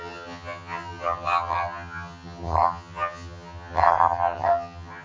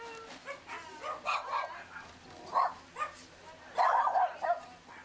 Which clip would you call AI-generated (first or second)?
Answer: first